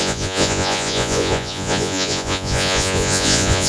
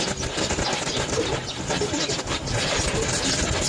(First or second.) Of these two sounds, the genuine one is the second